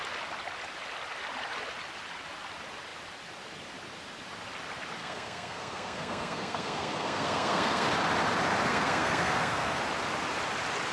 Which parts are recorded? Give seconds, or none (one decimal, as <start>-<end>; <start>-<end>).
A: 0.0-5.0; 7.9-8.7; 9.8-10.9